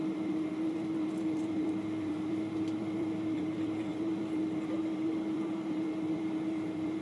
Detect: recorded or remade remade